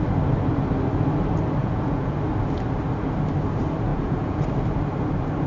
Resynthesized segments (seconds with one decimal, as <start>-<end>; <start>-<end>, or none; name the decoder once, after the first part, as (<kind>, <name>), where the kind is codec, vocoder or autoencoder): 1.6-2.2 (vocoder, Vocos); 3.9-4.4